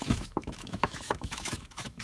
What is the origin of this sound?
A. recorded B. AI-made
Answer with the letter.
B